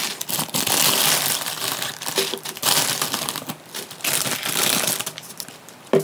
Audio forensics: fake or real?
real